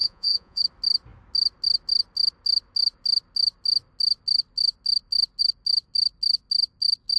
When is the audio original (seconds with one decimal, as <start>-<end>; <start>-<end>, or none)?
0.6-7.2